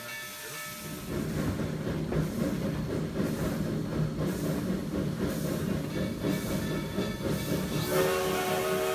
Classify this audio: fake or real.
real